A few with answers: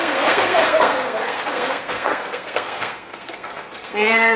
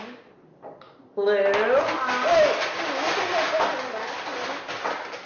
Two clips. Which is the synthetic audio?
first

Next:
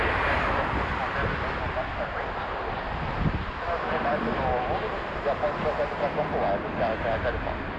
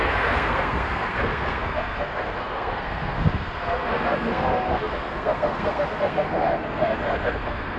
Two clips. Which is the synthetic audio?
second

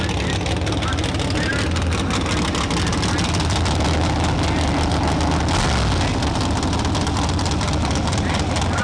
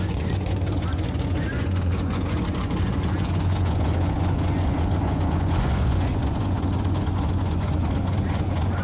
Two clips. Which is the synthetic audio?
second